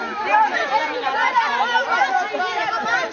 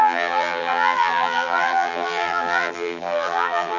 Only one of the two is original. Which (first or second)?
first